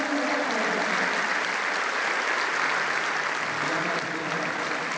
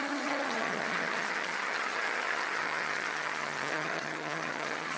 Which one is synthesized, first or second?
second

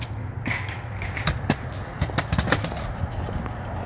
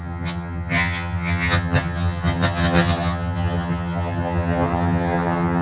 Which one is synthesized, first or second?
second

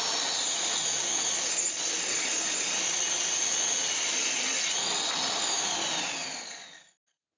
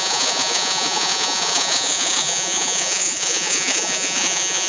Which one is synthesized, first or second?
second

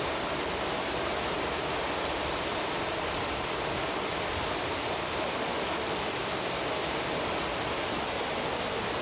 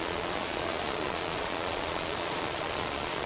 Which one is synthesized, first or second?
second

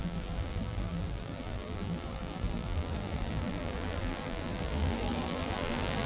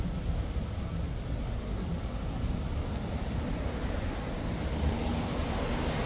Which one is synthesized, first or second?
first